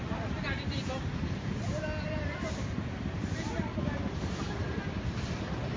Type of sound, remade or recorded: remade